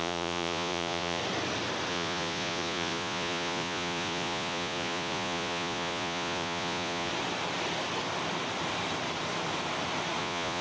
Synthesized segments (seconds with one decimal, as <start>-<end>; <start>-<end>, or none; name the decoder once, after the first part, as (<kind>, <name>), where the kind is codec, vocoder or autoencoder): 0.0-1.2 (vocoder, Vocos); 1.9-7.1; 10.2-10.6